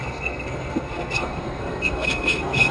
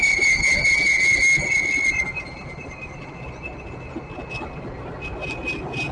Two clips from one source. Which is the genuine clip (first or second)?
second